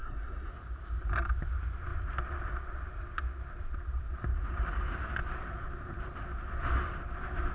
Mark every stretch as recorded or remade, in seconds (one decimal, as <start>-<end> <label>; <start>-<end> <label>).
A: 0.0-0.5 remade; 0.5-7.5 recorded